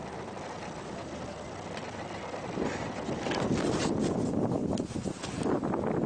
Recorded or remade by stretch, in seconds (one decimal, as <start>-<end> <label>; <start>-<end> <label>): 0.0-6.1 recorded